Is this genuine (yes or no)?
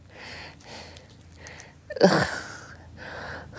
yes